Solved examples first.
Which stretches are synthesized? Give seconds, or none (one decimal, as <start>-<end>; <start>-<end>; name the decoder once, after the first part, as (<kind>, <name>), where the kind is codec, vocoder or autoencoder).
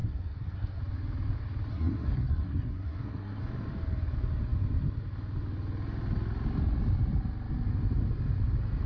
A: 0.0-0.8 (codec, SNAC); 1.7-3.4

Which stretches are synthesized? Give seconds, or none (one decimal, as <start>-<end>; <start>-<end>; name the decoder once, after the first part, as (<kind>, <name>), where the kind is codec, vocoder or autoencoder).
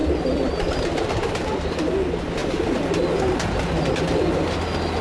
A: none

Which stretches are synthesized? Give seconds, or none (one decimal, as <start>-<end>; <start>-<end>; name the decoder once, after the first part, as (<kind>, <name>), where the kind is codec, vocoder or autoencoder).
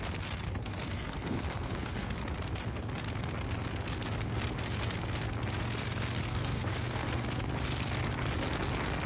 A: 0.6-2.2 (codec, SNAC); 6.2-7.2